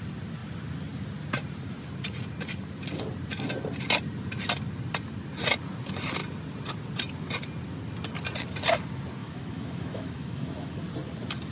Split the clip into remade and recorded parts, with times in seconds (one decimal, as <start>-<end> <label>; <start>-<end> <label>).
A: 0.0-9.2 recorded; 9.2-10.8 remade; 10.8-11.5 recorded